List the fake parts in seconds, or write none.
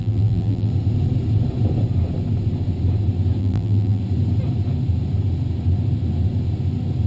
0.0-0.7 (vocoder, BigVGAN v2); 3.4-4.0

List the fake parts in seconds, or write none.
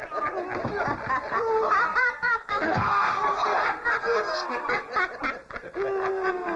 2.0-4.9 (codec, SNAC); 6.1-6.6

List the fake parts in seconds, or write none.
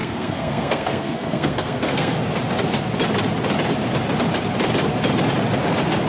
0.0-2.2 (codec, SNAC)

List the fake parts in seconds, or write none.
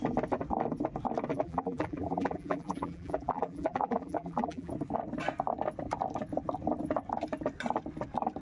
1.3-4.7 (vocoder, BigVGAN v2)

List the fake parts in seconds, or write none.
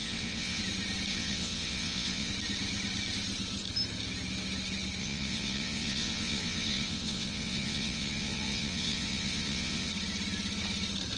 0.0-0.6 (vocoder, WaveNeXt); 1.1-2.3; 5.0-9.9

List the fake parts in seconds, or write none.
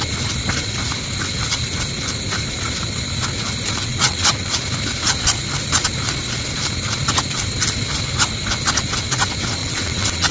3.8-4.5 (vocoder, WaveNeXt); 9.6-10.3